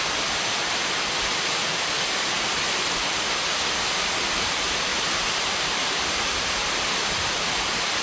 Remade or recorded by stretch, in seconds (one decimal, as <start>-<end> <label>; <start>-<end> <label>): 0.0-4.9 recorded; 4.9-6.6 remade; 6.6-8.0 recorded